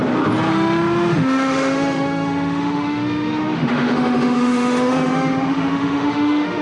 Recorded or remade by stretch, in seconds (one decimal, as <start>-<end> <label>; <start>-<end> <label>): 0.0-0.5 recorded; 0.5-6.6 remade